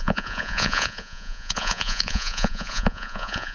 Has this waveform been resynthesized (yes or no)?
yes